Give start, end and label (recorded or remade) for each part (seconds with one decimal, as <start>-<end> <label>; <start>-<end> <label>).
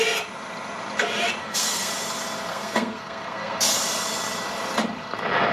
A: 0.0-1.4 recorded; 1.4-1.9 remade; 1.9-2.5 recorded; 2.5-3.8 remade; 3.8-5.5 recorded